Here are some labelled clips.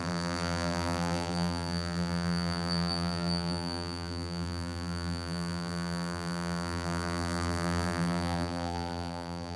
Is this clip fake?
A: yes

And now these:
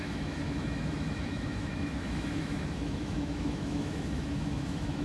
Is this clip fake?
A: yes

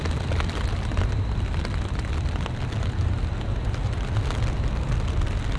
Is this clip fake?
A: no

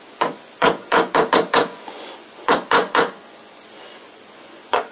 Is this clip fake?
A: yes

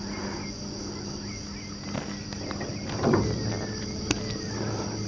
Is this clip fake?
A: no